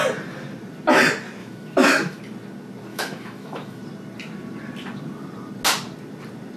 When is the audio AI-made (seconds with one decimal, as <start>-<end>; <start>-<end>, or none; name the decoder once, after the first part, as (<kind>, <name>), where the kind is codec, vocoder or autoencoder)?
1.4-2.2 (autoencoder, DAC-VAE); 2.9-3.8